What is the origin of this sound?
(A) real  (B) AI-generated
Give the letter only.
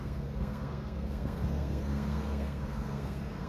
B